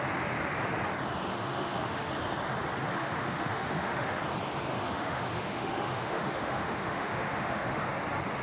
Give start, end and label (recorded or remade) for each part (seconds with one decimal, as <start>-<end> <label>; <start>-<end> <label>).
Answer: 0.0-1.3 recorded; 1.3-2.1 remade; 2.1-2.8 recorded; 2.8-4.2 remade; 4.2-4.7 recorded; 4.7-7.8 remade; 7.8-8.4 recorded